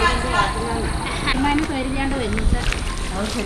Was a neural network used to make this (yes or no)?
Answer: no